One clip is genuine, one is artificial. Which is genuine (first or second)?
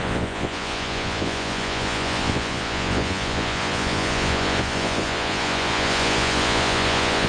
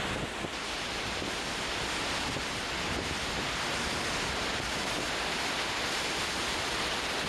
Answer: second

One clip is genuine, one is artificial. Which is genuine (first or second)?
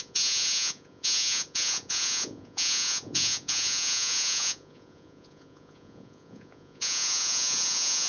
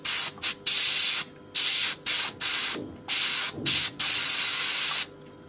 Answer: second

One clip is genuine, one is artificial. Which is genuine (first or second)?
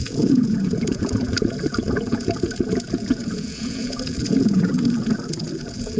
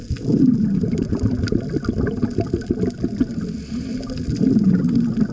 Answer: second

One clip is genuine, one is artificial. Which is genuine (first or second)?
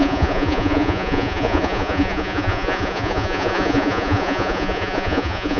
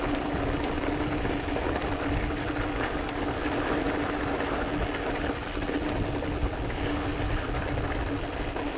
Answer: second